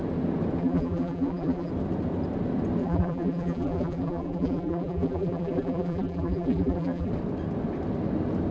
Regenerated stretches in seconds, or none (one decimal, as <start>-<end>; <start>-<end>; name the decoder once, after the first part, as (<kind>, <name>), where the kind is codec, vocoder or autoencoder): 0.6-1.7 (vocoder, BigVGAN v2); 2.8-7.1